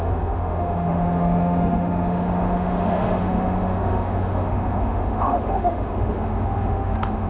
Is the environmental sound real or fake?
fake